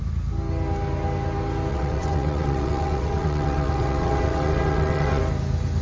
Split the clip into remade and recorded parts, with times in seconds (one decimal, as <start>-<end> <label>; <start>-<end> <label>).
0.0-1.7 recorded; 1.7-5.2 remade; 5.2-5.8 recorded